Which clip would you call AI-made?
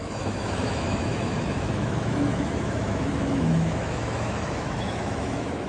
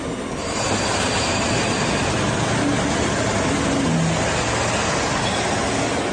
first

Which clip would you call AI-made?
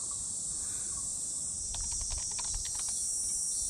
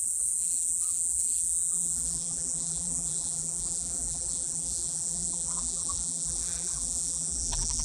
second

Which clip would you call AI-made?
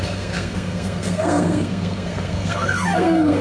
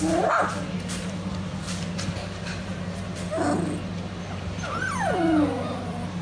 first